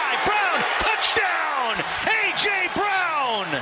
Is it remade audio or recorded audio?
recorded